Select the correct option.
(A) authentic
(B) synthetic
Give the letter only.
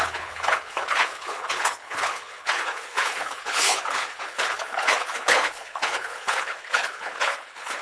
B